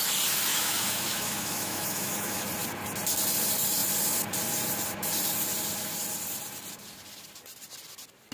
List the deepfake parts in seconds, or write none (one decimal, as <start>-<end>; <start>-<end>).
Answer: 0.5-2.5